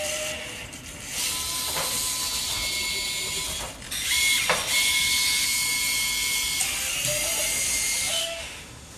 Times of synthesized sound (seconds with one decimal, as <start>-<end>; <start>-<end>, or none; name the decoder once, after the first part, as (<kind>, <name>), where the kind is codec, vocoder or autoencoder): 8.2-9.0 (autoencoder, DAC-VAE)